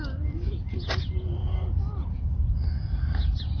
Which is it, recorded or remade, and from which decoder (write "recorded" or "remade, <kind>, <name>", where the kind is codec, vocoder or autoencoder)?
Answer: recorded